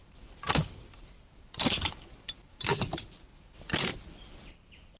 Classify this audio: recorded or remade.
recorded